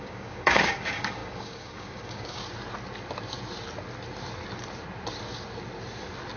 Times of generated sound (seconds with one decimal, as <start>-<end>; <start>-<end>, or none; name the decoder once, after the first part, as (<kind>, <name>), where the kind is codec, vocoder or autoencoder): 0.0-2.4 (codec, DAC)